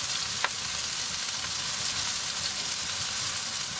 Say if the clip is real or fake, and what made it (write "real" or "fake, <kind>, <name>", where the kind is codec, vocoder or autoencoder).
real